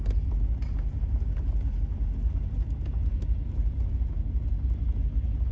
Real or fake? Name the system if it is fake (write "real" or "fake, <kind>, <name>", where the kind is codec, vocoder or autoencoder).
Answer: real